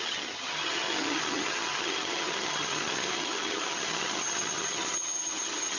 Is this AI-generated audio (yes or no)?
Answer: yes